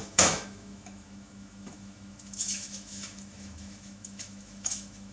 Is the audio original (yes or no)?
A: no